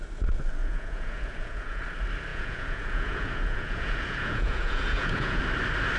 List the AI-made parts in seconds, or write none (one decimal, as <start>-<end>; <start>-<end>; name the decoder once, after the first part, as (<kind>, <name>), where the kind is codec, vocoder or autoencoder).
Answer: 0.6-1.8 (vocoder, Vocos); 2.3-5.4